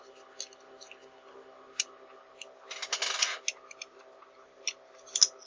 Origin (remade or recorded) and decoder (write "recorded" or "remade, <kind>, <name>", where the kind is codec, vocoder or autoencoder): recorded